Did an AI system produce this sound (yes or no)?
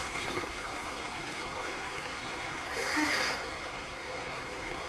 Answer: yes